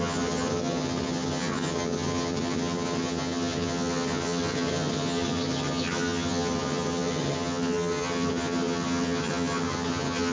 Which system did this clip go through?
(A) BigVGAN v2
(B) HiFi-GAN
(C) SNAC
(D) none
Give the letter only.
B